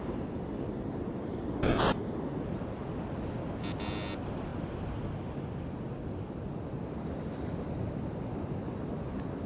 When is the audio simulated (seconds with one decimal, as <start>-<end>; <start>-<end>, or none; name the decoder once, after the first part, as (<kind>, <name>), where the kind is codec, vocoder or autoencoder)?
none